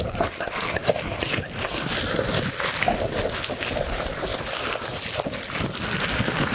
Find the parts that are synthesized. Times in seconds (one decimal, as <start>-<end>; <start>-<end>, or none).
none